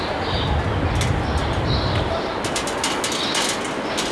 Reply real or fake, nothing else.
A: real